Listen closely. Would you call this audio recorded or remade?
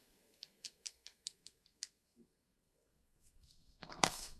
remade